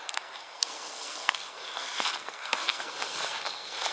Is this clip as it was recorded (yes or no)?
no